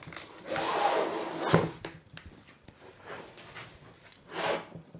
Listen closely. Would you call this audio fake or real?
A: real